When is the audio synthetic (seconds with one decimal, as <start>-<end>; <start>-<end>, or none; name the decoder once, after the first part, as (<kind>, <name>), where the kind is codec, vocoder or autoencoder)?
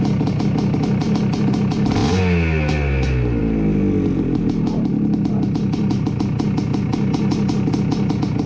none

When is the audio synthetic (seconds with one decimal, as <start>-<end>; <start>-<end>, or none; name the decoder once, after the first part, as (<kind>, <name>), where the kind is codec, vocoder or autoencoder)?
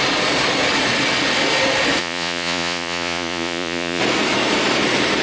2.0-4.0 (vocoder, Vocos)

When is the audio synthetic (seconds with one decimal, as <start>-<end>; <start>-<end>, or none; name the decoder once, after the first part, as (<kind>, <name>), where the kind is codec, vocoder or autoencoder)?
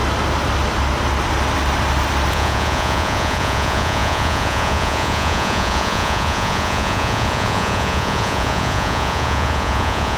2.3-10.2 (vocoder, Vocos)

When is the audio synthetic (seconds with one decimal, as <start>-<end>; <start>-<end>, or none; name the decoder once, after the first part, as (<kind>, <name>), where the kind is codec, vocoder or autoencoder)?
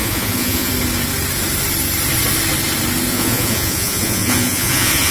0.0-0.7 (vocoder, Vocos); 3.1-5.1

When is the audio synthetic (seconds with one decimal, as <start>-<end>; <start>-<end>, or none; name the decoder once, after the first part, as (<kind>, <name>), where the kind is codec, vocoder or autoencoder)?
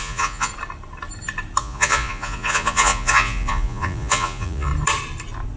0.0-0.5 (vocoder, Vocos); 1.6-4.7